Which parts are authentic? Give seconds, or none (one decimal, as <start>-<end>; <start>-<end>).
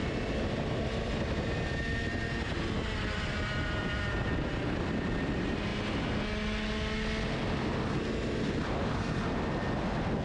0.0-10.2